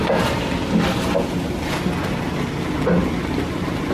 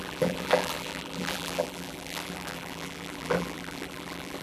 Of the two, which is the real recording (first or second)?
first